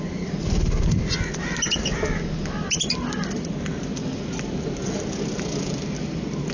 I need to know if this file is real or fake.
real